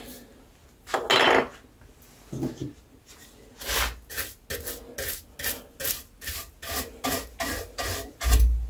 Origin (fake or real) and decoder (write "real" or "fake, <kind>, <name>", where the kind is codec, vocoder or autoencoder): real